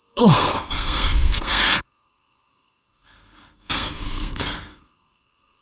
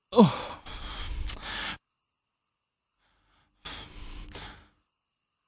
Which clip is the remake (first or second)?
first